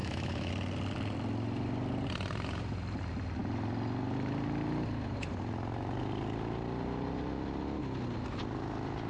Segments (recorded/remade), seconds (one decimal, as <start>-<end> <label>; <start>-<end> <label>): 0.0-0.5 remade; 0.5-9.1 recorded